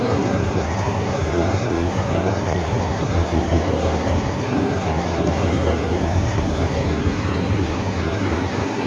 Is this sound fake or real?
fake